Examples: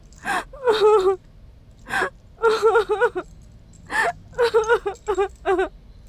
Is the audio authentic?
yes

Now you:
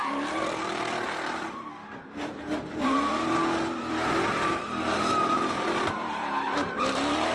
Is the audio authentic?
no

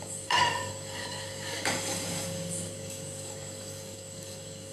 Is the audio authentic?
no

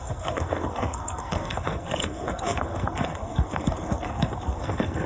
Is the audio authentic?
no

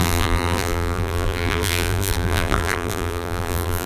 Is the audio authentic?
no